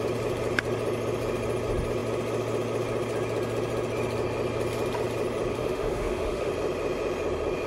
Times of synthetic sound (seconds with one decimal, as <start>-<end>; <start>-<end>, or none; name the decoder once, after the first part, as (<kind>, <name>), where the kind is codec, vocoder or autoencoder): 5.5-6.5 (autoencoder, DAC-VAE)